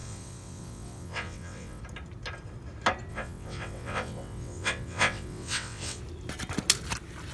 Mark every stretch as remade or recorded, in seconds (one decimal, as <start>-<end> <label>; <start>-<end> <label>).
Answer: 0.0-1.8 remade; 1.8-3.1 recorded; 3.1-6.0 remade; 6.0-7.3 recorded